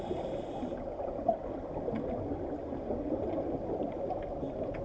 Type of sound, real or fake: real